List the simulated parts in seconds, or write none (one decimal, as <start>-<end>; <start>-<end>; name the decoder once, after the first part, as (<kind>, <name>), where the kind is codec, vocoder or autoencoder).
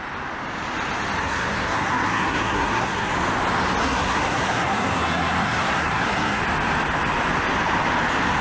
1.2-3.1 (codec, SNAC); 3.8-6.4